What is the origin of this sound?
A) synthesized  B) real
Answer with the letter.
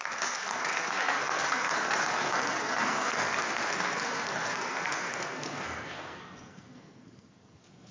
A